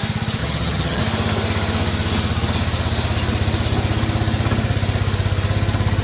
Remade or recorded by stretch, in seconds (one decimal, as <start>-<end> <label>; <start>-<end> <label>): 0.0-0.4 recorded; 0.4-1.0 remade; 1.0-6.0 recorded